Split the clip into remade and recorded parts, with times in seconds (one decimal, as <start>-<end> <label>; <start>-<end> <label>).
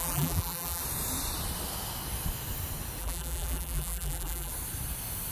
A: 0.0-0.8 remade; 0.8-3.0 recorded; 3.0-4.5 remade; 4.5-5.3 recorded